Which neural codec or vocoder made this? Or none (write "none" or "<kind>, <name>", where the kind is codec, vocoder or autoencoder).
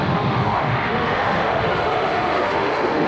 autoencoder, DAC-VAE